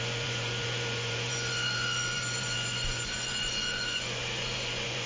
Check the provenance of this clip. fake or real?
fake